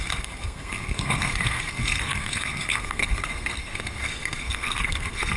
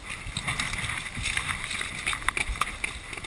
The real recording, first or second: second